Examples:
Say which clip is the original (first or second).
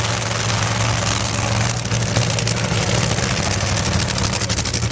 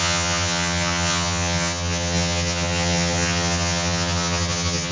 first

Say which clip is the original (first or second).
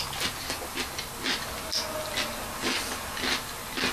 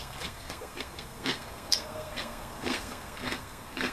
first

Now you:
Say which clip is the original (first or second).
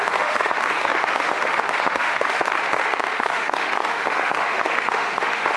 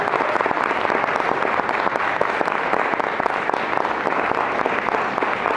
second